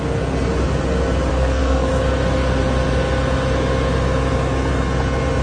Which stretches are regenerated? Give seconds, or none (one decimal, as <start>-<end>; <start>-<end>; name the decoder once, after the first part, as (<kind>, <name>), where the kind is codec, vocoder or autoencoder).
1.3-1.9 (codec, SNAC)